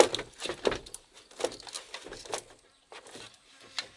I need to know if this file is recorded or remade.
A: recorded